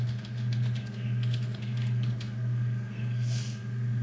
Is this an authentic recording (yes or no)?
no